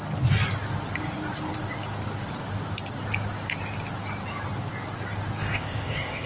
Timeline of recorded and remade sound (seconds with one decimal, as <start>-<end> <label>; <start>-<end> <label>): 0.0-5.4 recorded; 5.4-6.3 remade